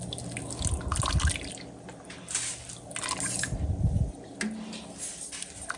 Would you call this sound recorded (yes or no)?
yes